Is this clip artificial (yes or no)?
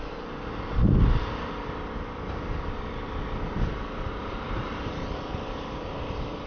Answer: no